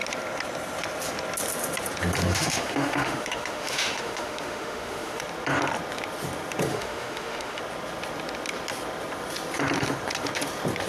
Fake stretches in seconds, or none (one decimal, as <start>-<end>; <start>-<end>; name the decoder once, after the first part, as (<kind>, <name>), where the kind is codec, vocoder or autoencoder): 2.3-5.2 (autoencoder, DAC-VAE); 6.7-7.6